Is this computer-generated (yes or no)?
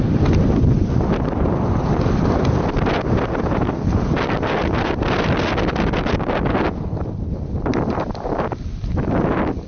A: no